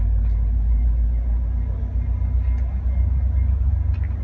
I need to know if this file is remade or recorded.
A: recorded